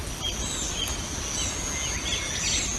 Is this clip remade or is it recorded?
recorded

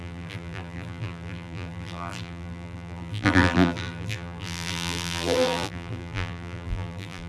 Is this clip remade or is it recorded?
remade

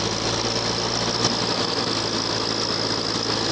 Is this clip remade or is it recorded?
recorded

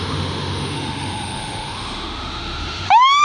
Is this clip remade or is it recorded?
remade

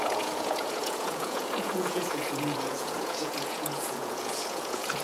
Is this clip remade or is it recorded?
remade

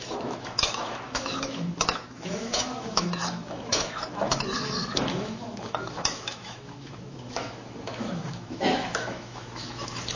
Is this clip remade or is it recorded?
remade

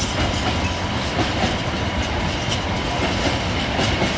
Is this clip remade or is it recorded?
recorded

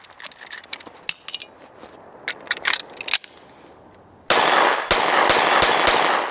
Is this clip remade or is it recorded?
recorded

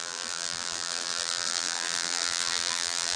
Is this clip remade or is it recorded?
remade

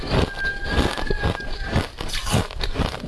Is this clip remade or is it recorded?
recorded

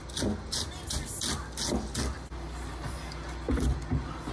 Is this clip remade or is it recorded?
recorded